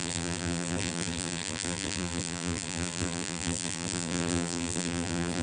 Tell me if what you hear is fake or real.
fake